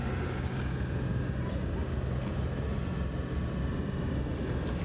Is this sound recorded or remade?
recorded